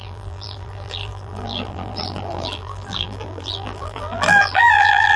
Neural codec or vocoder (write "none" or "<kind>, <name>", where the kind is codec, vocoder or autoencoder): vocoder, BigVGAN v2